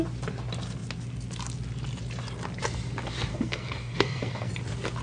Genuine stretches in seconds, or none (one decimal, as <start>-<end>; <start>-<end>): 0.0-3.3; 4.5-5.0